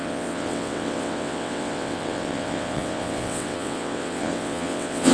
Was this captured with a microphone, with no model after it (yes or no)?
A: no